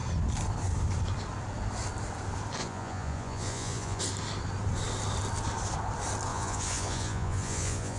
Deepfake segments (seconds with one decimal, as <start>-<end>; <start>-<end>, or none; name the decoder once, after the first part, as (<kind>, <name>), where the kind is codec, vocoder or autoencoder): 2.6-4.0 (vocoder, Vocos); 6.3-8.0